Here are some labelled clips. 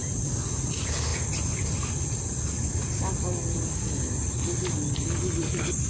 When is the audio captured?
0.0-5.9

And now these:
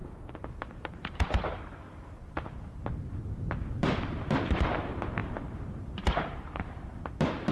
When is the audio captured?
2.2-3.8

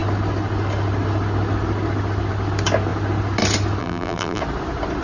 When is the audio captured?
0.0-3.8; 4.4-5.0